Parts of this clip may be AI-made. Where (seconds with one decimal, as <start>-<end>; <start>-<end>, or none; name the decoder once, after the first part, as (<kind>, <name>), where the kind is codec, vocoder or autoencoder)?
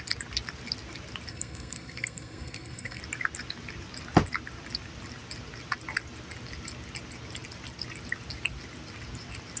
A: 1.3-3.0 (codec, SNAC)